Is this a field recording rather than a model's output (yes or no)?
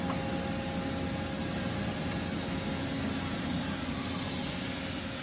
yes